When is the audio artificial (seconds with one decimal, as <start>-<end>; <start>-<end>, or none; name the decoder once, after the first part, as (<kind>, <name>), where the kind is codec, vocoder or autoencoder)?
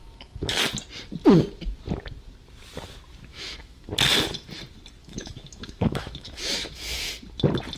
0.0-0.7 (autoencoder, DAC-VAE); 3.3-3.9; 5.0-7.1